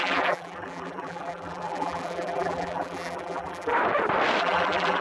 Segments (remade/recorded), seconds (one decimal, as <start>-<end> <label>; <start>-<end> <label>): 0.0-3.7 remade; 3.7-4.4 recorded; 4.4-5.0 remade